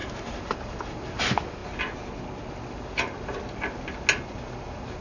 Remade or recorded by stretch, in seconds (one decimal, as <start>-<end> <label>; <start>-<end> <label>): 0.0-1.2 remade; 1.2-5.0 recorded